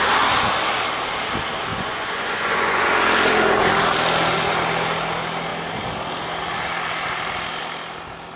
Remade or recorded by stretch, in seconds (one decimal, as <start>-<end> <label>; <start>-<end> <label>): 0.0-1.7 recorded; 1.7-2.9 remade; 2.9-8.4 recorded